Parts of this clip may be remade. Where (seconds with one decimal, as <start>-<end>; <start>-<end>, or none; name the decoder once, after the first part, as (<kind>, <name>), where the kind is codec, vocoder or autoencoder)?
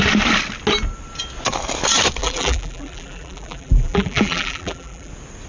2.2-5.1 (vocoder, BigVGAN v2)